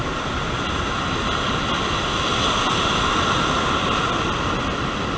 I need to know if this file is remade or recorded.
recorded